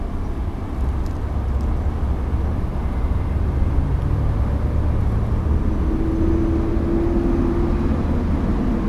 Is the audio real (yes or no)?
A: yes